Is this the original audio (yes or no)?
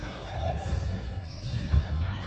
no